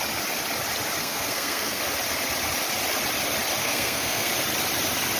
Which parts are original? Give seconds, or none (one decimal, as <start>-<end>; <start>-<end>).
0.0-1.0; 1.8-3.6; 4.3-5.2